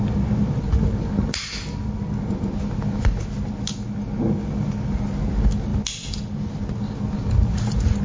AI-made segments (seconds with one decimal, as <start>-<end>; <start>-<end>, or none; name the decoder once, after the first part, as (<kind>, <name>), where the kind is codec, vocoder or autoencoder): none